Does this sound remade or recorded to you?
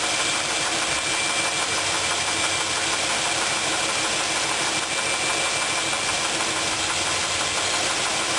recorded